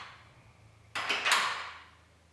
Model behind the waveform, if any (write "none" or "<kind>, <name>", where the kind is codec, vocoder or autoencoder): none